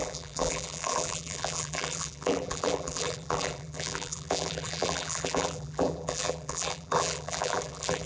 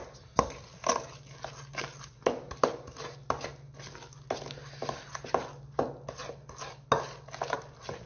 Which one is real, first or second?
second